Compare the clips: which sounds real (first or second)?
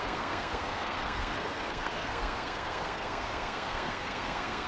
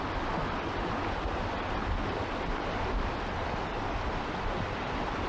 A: second